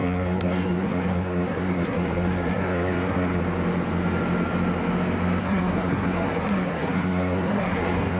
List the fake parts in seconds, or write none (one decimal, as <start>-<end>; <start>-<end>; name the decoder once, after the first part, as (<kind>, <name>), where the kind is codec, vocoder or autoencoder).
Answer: 0.0-3.4 (codec, SNAC); 5.4-8.2